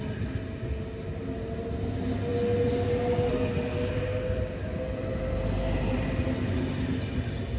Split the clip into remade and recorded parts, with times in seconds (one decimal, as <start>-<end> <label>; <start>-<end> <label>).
0.0-7.6 recorded